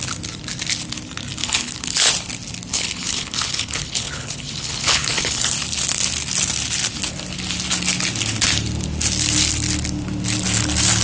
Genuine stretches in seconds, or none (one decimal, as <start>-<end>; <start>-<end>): 0.0-1.4; 2.1-2.7; 5.5-11.0